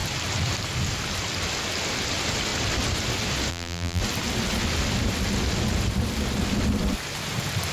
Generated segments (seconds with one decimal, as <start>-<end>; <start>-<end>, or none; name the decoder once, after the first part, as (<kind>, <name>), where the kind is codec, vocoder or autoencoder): 3.5-4.0 (vocoder, BigVGAN v2)